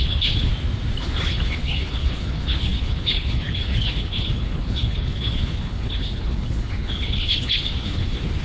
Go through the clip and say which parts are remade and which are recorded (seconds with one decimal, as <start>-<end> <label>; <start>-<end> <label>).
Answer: 0.0-0.5 remade; 0.5-1.0 recorded; 1.0-8.4 remade